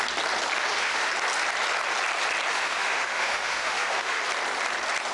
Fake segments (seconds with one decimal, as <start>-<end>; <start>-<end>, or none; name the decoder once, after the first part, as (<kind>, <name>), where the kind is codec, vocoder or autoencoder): 0.6-1.1 (autoencoder, DAC-VAE); 2.5-4.2